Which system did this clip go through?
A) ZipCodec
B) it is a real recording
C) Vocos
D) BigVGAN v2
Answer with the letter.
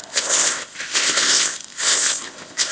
A